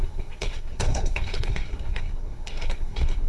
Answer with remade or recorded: remade